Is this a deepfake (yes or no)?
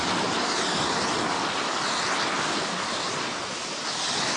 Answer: no